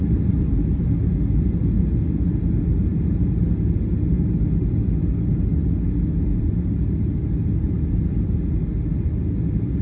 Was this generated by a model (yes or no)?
no